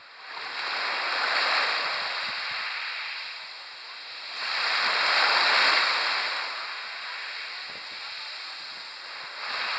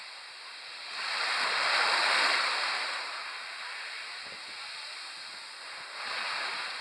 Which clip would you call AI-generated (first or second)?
second